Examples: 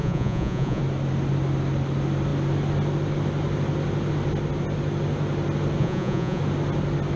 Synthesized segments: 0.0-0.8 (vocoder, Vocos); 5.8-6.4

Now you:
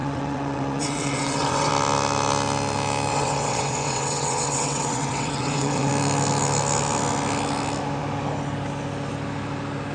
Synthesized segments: 0.0-1.7 (vocoder, WaveNeXt); 3.1-5.9

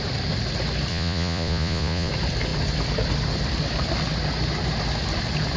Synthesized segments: 0.9-2.1 (vocoder, Vocos)

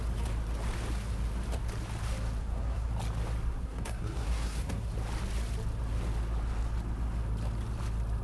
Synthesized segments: 2.4-2.9 (codec, SNAC); 3.6-4.9

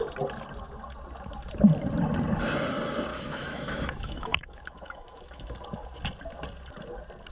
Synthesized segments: 3.1-5.5 (autoencoder, DAC-VAE)

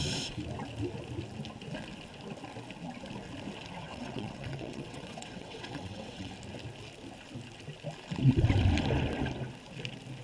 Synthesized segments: 3.8-6.3 (vocoder, WaveNeXt)

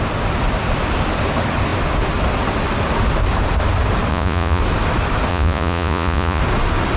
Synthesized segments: 4.1-4.6 (vocoder, Vocos); 5.3-6.4

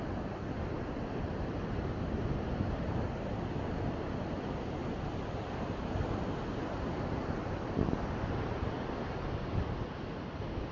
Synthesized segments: none